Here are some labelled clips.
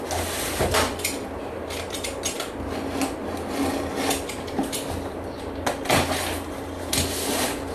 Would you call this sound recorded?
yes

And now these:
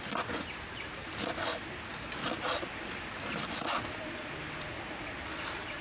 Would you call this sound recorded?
yes